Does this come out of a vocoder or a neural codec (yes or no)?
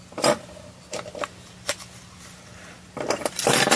no